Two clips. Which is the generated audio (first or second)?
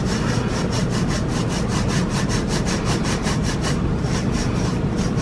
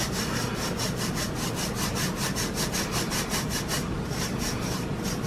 first